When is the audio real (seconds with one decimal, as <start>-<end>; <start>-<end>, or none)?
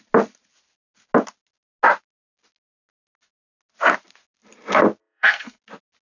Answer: 0.0-5.0; 5.6-6.2